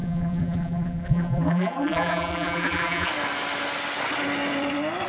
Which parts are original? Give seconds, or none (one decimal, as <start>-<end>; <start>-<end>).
3.1-5.1